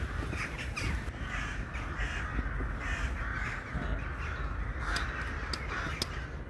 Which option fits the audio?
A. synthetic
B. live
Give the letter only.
B